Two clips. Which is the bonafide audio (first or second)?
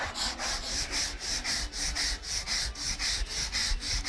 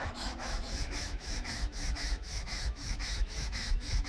first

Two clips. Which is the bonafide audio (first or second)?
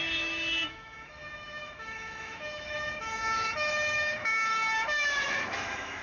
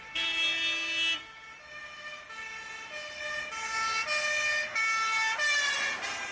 second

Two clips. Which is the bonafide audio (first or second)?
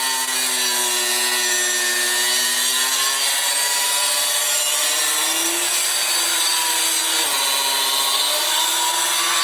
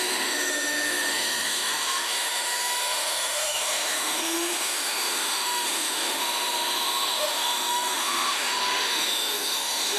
first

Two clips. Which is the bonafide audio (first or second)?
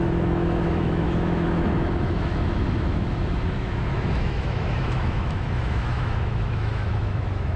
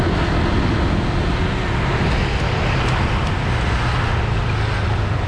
second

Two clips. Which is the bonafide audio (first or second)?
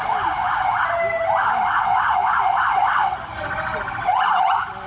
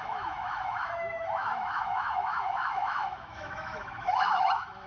first